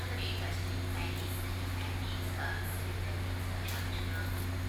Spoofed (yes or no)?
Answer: no